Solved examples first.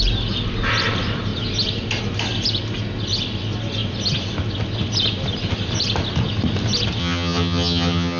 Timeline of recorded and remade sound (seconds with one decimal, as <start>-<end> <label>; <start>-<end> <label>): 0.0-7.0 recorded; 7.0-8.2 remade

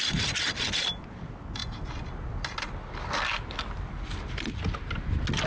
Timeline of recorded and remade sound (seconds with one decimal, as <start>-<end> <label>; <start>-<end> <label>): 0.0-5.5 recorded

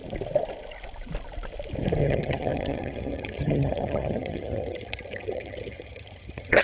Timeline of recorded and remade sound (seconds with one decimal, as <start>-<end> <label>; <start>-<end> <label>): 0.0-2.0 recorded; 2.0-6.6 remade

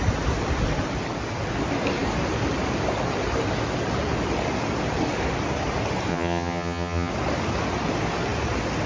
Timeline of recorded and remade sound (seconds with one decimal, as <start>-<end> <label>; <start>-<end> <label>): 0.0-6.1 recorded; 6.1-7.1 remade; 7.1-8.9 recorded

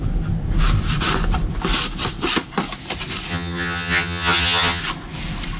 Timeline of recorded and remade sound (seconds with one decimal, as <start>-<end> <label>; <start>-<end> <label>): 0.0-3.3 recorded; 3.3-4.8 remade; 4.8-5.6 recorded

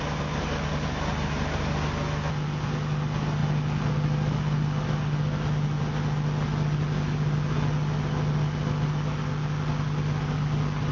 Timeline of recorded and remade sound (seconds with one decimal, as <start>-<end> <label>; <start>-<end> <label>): 0.0-10.9 recorded